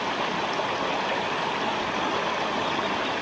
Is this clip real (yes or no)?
yes